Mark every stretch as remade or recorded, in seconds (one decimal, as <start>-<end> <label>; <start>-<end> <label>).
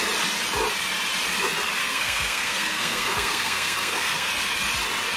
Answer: 0.0-1.8 recorded; 1.8-4.3 remade; 4.3-5.2 recorded